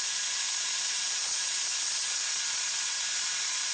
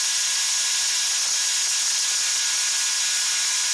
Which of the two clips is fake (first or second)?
first